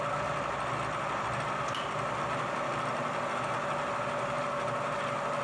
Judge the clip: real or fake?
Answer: real